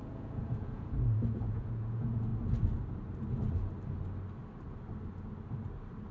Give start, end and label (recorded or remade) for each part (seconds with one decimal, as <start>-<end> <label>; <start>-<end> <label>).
0.0-2.3 remade; 2.3-6.1 recorded